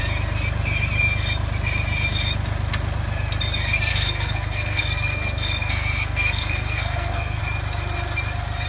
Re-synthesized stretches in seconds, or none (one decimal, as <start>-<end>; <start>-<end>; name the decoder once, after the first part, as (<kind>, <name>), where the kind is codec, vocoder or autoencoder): 3.9-7.4 (codec, SNAC)